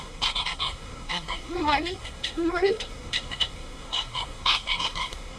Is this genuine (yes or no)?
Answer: no